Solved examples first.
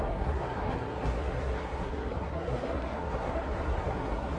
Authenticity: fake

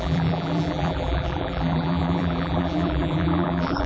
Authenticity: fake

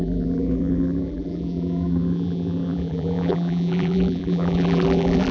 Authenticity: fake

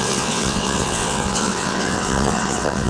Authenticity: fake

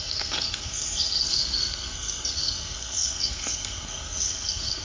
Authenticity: fake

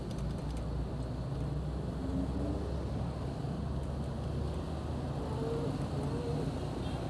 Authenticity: real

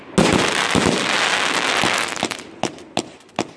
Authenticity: real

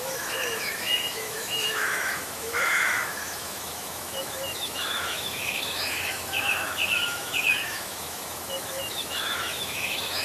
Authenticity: fake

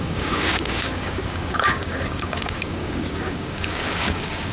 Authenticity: fake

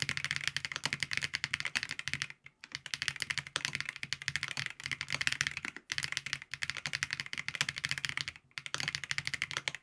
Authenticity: real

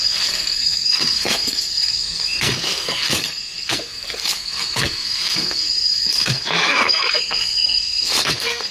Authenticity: fake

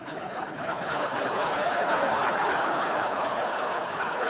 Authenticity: fake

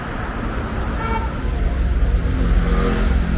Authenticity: real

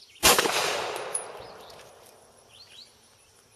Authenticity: fake